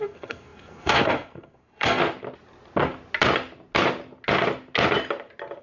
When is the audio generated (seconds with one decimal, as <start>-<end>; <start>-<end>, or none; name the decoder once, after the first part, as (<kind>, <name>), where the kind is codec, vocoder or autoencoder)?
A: 0.0-2.0 (codec, SNAC)